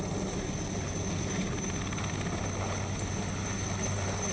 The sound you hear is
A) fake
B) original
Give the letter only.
B